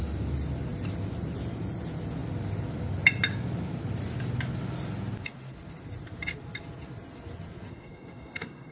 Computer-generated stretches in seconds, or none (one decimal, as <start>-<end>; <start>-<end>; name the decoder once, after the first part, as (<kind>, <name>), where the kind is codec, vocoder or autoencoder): 7.7-8.7 (codec, SNAC)